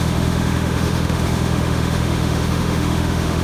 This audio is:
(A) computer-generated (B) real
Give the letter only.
A